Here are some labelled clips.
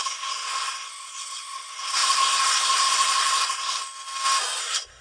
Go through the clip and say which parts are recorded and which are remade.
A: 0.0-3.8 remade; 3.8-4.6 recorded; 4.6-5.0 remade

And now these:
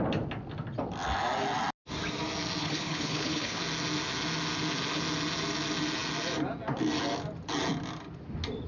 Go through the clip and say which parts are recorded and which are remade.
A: 0.0-2.6 recorded; 2.6-3.6 remade; 3.6-8.7 recorded

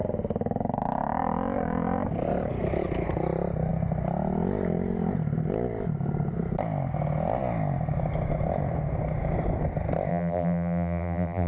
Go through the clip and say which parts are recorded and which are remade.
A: 0.0-10.1 recorded; 10.1-11.5 remade

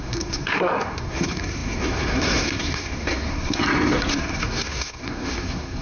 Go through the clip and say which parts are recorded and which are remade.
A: 0.0-3.6 remade; 3.6-4.1 recorded; 4.1-5.8 remade

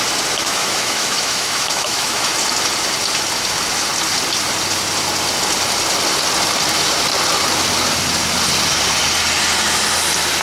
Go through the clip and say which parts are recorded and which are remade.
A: 0.0-0.4 recorded; 0.4-2.3 remade; 2.3-10.4 recorded

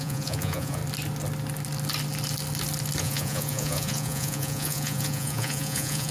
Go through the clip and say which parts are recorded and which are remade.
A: 0.0-0.8 remade; 0.8-3.0 recorded; 3.0-6.1 remade

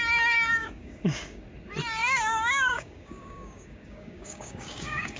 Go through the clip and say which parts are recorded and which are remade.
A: 0.0-0.6 recorded; 0.6-1.4 remade; 1.4-2.0 recorded; 2.0-5.2 remade

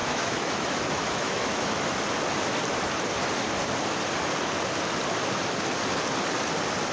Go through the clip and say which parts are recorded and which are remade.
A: 0.0-2.0 remade; 2.0-6.9 recorded